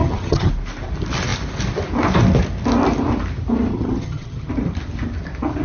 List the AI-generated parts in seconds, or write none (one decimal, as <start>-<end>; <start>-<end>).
0.0-0.5; 3.7-4.5